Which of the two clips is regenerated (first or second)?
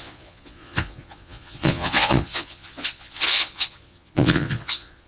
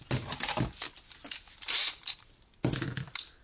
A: first